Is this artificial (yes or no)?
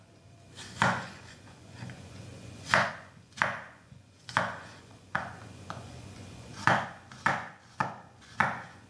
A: yes